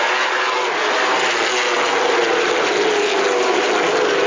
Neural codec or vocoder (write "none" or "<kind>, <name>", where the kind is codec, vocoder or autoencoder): none